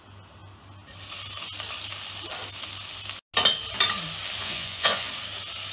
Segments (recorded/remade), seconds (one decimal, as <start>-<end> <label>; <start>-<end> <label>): 0.0-4.4 recorded; 4.4-5.1 remade; 5.1-5.7 recorded